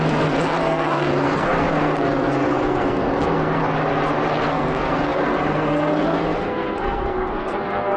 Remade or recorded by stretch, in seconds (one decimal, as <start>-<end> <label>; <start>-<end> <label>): 0.0-3.6 remade; 3.6-4.3 recorded; 4.3-8.0 remade

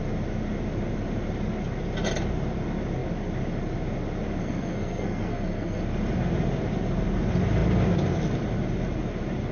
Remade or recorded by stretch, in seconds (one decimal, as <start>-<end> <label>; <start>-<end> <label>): 0.0-4.4 recorded; 4.4-5.8 remade; 5.8-9.5 recorded

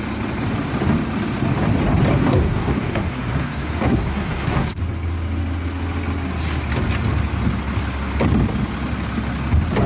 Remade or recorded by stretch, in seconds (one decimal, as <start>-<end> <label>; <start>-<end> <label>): 0.0-2.1 recorded; 2.1-4.8 remade; 4.8-9.9 recorded

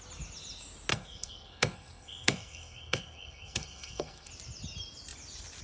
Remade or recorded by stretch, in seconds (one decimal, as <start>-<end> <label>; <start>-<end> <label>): 0.0-0.9 recorded; 0.9-4.3 remade; 4.3-5.6 recorded